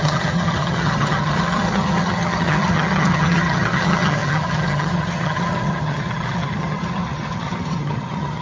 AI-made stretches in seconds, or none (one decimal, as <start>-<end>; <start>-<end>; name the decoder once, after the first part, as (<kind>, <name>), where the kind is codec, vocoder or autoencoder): 0.0-8.4 (vocoder, HiFi-GAN)